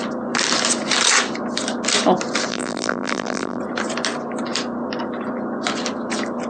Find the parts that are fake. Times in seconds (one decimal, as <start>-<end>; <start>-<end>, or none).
2.5-3.6